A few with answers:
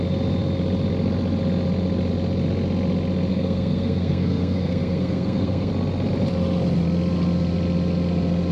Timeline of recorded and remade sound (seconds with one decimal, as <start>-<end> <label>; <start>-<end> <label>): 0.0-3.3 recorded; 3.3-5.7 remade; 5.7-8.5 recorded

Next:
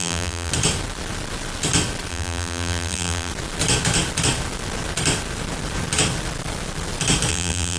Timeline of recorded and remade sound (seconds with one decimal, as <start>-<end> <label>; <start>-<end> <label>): 0.0-0.5 remade; 0.5-2.1 recorded; 2.1-3.3 remade; 3.3-7.3 recorded; 7.3-7.8 remade

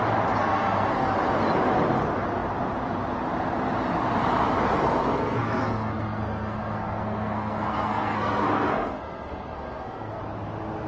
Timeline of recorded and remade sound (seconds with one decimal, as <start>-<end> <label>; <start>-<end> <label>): 0.0-0.4 recorded; 0.4-1.1 remade; 1.1-5.0 recorded; 5.0-10.2 remade; 10.2-10.9 recorded

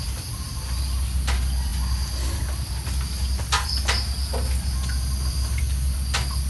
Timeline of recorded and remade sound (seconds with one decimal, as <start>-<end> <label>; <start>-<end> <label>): 0.0-6.5 recorded

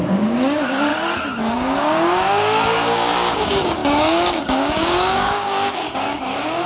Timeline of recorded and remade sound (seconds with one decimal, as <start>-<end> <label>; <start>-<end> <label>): 0.0-0.9 remade; 0.9-1.5 recorded; 1.5-6.7 remade